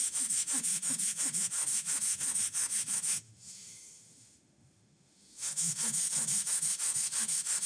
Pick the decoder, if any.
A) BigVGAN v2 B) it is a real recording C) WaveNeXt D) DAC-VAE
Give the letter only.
D